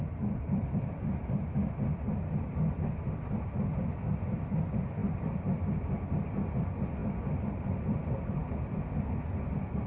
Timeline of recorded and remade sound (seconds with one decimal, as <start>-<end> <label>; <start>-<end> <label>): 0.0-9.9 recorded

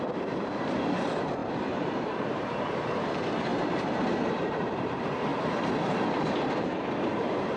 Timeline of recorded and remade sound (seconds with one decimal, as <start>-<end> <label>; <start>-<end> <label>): 0.0-7.6 remade

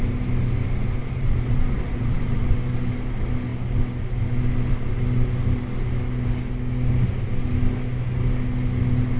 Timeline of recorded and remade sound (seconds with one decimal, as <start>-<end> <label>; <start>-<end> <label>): 0.0-1.0 recorded; 1.0-2.4 remade; 2.4-9.2 recorded

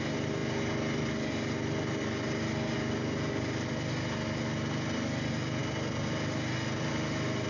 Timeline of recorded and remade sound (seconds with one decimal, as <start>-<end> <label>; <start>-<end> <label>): 0.0-7.5 recorded

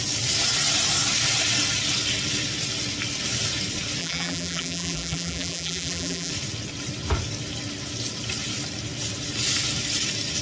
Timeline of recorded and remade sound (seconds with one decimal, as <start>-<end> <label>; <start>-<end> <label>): 0.0-4.0 recorded; 4.0-6.3 remade; 6.3-10.4 recorded